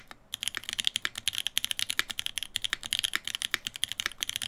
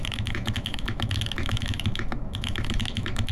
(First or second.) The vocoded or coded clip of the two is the second